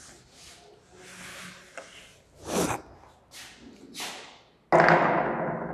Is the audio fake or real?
real